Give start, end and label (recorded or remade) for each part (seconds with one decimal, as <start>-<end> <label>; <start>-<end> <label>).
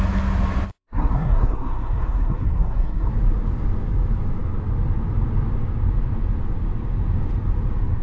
0.0-0.7 recorded; 0.7-3.1 remade; 3.1-8.0 recorded